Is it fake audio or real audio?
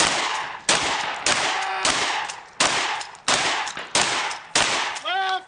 real